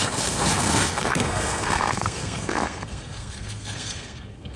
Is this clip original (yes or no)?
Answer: no